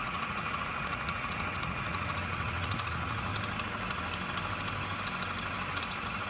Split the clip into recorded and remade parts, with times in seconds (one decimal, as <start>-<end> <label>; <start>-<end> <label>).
0.0-3.3 remade; 3.3-5.8 recorded; 5.8-6.3 remade